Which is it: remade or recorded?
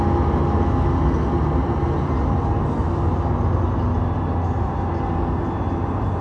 recorded